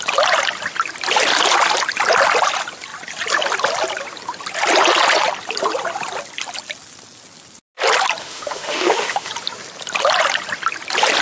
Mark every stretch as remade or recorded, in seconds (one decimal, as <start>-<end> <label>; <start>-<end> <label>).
0.0-8.2 recorded; 8.2-9.3 remade; 9.3-11.2 recorded